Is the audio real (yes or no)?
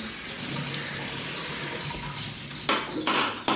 yes